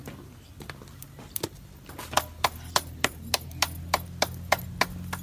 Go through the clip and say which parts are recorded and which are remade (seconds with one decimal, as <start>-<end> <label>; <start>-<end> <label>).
0.0-5.2 recorded